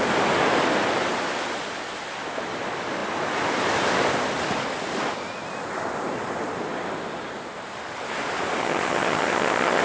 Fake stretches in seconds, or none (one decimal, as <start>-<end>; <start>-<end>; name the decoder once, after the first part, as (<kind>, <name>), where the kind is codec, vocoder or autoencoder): 8.6-9.8 (vocoder, HiFi-GAN)